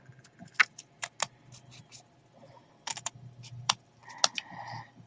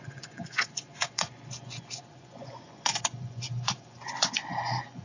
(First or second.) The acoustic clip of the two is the first